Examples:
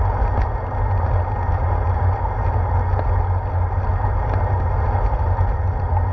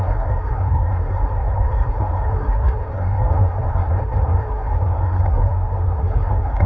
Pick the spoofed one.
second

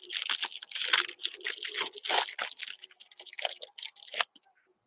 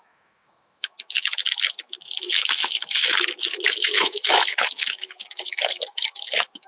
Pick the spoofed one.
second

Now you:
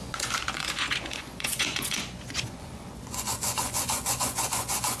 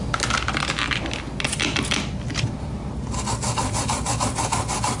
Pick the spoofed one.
first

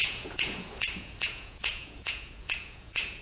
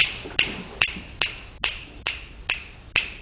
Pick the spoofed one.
first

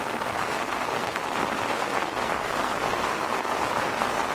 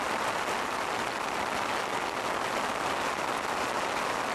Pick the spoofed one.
first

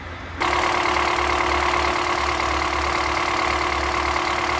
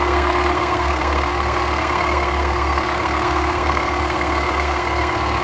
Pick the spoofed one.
second